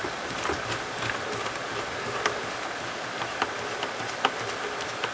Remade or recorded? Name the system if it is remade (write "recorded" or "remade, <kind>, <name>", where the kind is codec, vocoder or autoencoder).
recorded